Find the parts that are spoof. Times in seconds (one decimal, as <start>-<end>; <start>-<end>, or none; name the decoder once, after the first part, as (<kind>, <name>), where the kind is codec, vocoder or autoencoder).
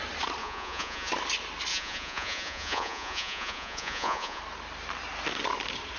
0.4-1.1 (vocoder, Vocos); 1.7-4.4